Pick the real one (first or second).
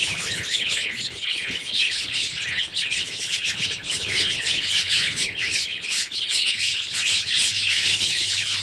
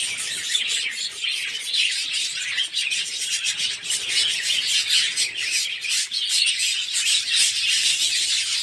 second